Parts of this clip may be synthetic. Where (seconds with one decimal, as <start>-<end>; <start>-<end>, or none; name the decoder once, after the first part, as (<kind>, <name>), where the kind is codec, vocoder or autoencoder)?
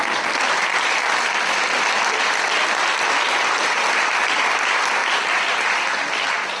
none